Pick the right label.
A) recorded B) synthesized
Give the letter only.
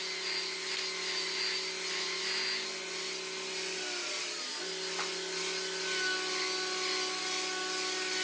A